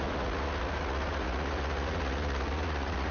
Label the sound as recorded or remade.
remade